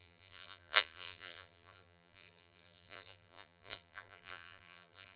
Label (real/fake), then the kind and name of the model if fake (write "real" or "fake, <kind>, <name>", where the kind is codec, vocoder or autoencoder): fake, vocoder, BigVGAN v2